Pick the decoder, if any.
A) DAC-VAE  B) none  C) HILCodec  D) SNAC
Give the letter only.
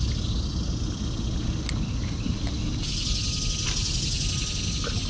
B